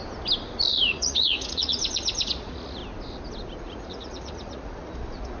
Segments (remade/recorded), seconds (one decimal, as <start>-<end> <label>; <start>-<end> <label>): 0.0-0.7 recorded; 0.7-2.8 remade; 2.8-3.6 recorded; 3.6-5.4 remade

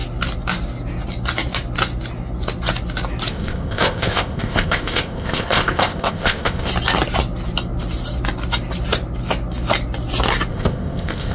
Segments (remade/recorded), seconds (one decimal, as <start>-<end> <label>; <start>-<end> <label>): 0.0-3.3 recorded; 3.3-6.7 remade; 6.7-10.5 recorded; 10.5-11.3 remade

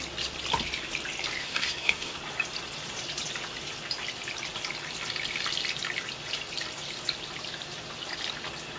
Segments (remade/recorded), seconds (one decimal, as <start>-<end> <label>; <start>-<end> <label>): 0.0-1.4 recorded; 1.4-2.2 remade; 2.2-8.8 recorded

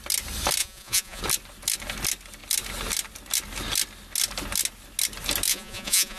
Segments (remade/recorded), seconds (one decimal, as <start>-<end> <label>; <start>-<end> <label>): 0.0-0.6 recorded; 0.6-1.2 remade; 1.2-5.5 recorded; 5.5-6.2 remade